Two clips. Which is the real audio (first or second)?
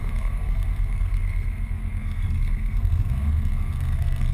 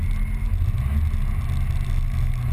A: second